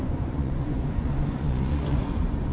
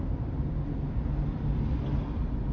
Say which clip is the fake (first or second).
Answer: first